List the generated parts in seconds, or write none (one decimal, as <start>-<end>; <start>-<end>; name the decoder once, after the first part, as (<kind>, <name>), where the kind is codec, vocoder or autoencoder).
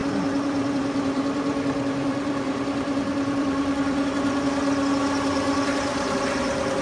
0.0-4.1 (vocoder, BigVGAN v2)